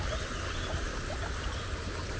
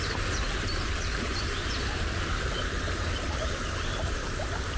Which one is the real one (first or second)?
first